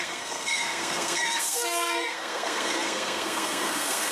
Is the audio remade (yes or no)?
yes